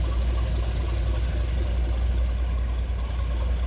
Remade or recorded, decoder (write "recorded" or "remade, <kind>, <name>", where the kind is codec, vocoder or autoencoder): recorded